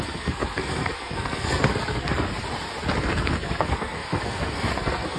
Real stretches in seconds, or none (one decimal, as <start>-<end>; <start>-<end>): 2.3-3.0